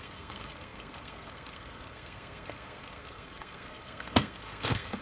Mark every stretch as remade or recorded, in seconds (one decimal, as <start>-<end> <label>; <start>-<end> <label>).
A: 0.0-5.0 remade